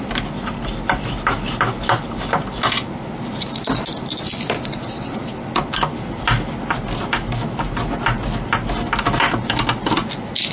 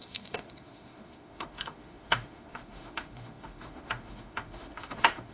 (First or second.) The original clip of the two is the first